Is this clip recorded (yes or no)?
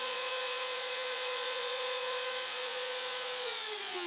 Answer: no